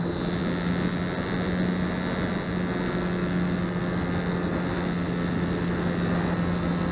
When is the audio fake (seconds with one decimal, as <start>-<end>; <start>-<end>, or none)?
none